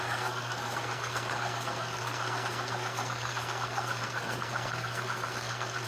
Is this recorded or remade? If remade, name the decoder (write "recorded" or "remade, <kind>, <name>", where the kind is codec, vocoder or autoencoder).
remade, codec, SNAC